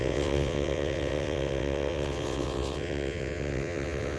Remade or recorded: remade